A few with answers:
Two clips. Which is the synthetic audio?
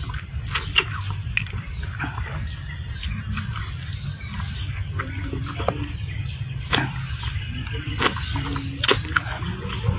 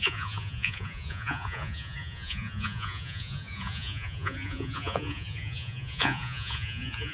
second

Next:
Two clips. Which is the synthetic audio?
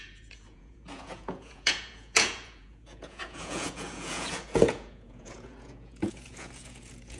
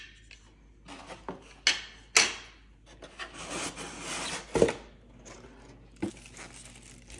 first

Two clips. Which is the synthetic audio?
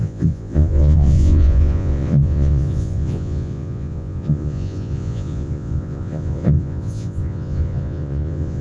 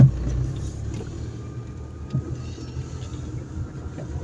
first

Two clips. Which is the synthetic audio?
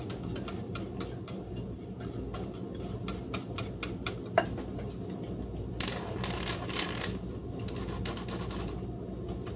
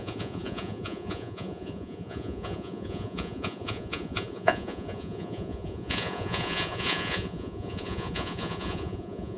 second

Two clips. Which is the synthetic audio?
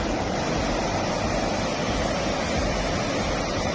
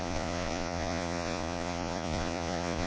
second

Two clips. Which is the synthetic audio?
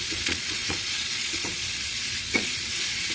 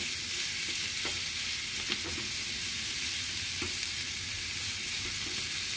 first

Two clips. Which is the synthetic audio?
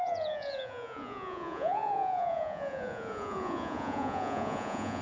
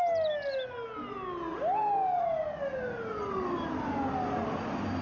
first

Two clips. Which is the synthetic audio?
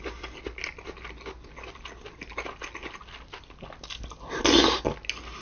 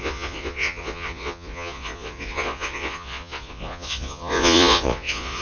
second